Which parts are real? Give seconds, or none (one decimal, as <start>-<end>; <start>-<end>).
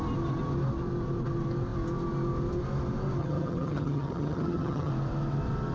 0.0-3.2; 4.9-5.7